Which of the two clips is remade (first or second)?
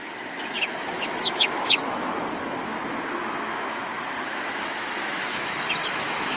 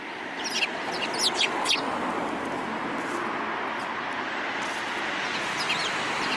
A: first